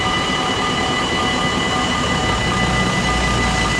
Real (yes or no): yes